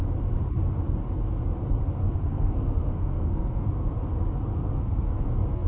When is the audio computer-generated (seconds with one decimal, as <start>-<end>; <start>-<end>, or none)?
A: 2.0-3.9; 4.5-5.1